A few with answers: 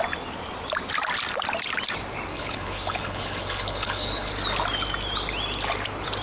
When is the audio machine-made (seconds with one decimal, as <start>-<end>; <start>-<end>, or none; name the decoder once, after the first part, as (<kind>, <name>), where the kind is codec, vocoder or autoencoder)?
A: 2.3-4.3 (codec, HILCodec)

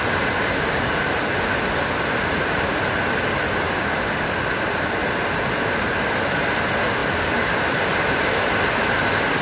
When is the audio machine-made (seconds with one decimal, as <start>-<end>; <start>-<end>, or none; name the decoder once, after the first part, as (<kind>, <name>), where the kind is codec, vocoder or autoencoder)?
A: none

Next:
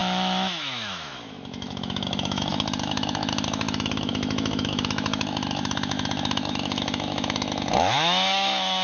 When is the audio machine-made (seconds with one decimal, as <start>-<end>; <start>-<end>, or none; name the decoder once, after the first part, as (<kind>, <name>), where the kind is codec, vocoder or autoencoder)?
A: 0.0-8.8 (autoencoder, DAC-VAE)

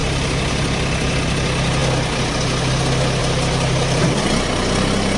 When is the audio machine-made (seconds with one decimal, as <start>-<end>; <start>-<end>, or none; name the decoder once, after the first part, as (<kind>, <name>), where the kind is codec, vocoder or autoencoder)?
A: 3.2-4.0 (vocoder, BigVGAN v2)